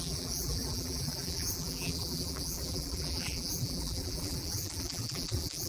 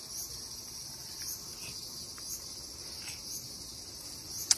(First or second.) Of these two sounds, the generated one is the first